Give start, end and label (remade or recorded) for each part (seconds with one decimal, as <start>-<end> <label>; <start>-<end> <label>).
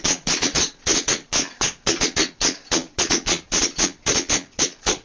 0.0-5.0 remade